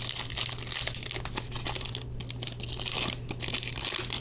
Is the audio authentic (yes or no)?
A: yes